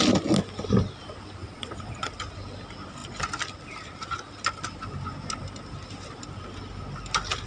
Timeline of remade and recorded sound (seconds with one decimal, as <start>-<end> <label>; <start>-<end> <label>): 0.0-1.4 recorded; 1.4-2.1 remade; 2.1-7.5 recorded